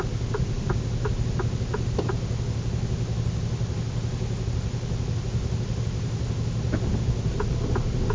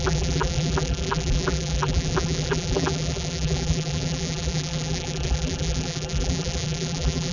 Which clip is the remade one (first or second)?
second